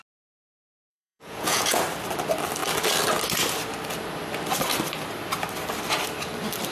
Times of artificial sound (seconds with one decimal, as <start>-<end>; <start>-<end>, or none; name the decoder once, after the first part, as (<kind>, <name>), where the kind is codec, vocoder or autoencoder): 0.9-1.8 (vocoder, Vocos)